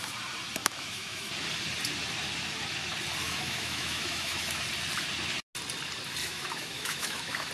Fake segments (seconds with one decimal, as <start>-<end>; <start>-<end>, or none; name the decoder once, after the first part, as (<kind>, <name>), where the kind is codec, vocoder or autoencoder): 0.6-1.3 (autoencoder, DAC-VAE); 3.2-4.6; 6.2-7.5